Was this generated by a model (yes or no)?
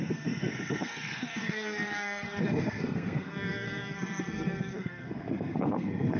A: yes